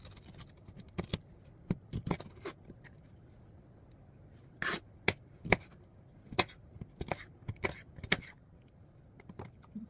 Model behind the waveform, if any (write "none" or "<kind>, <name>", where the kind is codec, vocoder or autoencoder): none